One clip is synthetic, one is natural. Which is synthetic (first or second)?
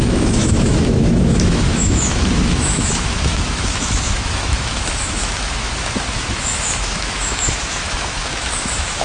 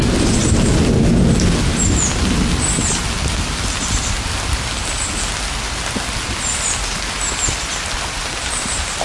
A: first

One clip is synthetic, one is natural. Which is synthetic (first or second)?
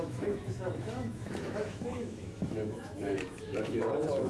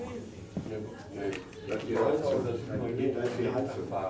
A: first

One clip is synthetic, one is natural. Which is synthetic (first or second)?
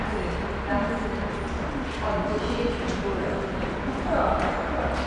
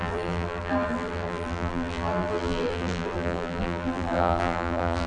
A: second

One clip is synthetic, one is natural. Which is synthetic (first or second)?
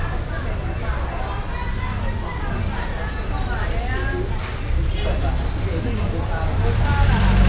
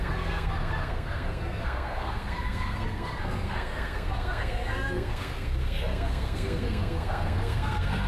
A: second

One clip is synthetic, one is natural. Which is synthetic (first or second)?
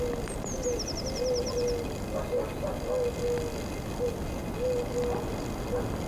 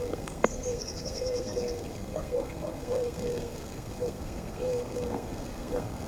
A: second